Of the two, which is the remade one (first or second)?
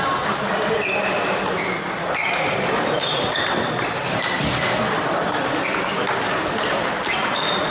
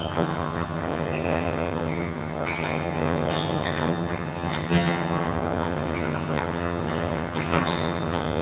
second